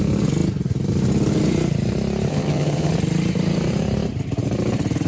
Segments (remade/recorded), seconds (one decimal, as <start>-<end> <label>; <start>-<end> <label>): 0.0-2.3 recorded; 2.3-2.9 remade; 2.9-5.1 recorded